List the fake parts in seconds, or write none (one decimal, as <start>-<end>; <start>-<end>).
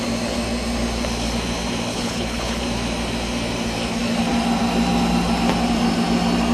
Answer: 1.9-2.6